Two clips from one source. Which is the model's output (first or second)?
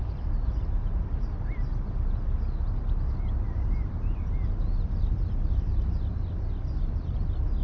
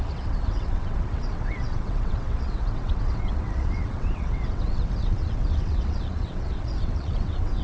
second